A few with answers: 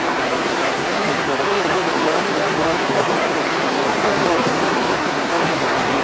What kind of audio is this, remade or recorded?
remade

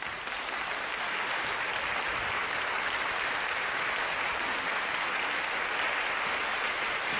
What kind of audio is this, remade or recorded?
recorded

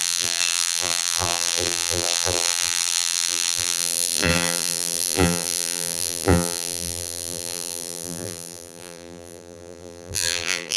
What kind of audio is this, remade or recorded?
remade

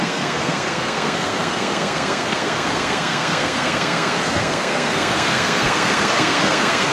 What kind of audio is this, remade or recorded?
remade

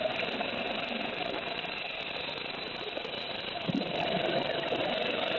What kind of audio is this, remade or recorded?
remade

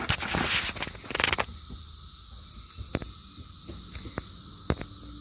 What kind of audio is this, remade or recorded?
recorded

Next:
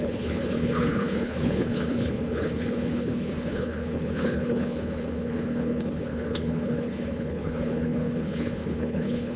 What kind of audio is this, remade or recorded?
remade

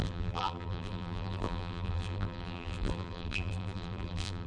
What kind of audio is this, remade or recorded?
remade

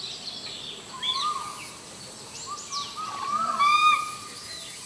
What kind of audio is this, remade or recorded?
recorded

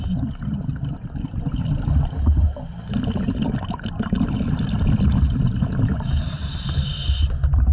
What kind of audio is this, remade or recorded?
recorded